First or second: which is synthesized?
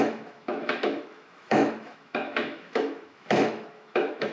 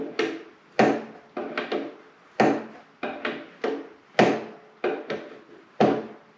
first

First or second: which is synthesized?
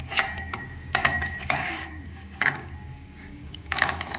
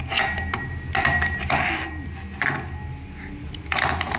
first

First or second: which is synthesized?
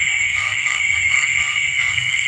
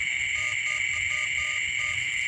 first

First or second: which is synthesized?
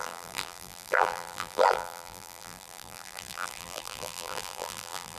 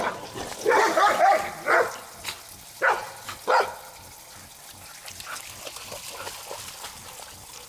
first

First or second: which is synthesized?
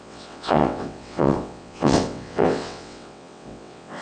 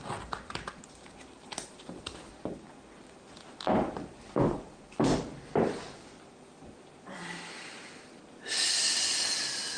first